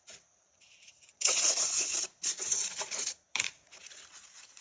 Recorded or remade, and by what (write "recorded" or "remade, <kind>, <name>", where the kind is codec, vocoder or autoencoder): remade, vocoder, Vocos